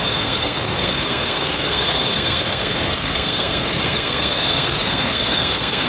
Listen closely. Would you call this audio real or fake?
fake